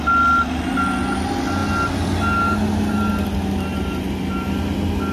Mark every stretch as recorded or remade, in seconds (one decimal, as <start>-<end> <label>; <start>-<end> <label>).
0.0-5.1 recorded